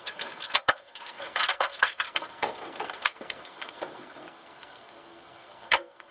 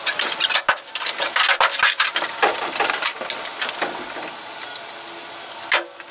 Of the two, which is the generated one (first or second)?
first